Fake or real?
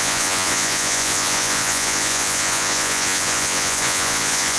fake